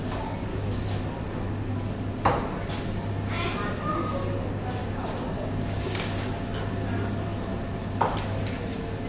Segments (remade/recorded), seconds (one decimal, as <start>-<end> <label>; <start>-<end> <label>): 0.0-0.5 recorded; 0.5-1.0 remade; 1.0-4.8 recorded; 4.8-6.7 remade; 6.7-9.1 recorded